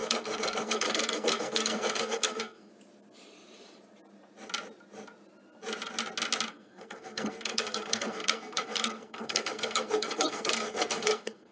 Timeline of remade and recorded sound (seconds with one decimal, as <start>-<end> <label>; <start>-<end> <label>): 0.0-2.7 remade; 2.7-6.5 recorded; 6.5-11.5 remade